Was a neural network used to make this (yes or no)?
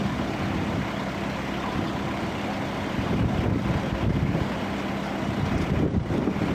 no